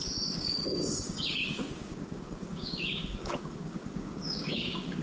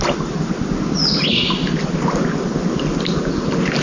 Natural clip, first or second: second